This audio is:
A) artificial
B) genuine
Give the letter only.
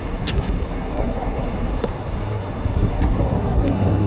A